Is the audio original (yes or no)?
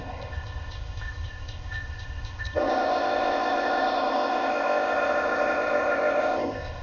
no